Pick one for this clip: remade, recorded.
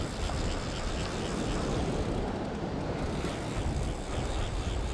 recorded